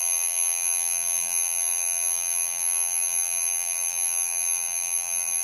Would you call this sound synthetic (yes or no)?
yes